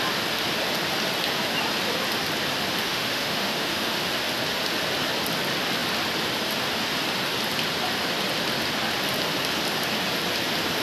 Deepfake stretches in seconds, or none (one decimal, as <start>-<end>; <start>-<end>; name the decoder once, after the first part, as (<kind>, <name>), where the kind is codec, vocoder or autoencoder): 2.8-4.1 (autoencoder, DAC-VAE)